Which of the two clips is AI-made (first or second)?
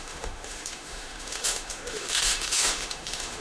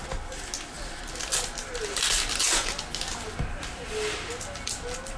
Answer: first